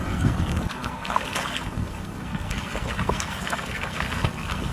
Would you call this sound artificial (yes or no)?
yes